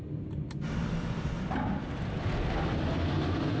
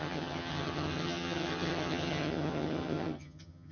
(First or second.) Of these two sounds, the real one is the first